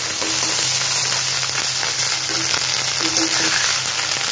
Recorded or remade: recorded